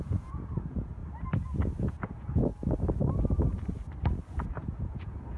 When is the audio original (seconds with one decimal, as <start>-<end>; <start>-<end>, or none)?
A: 1.0-1.8; 2.5-4.3